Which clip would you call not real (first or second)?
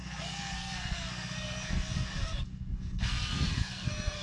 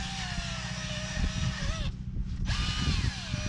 first